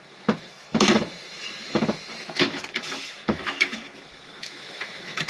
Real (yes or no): no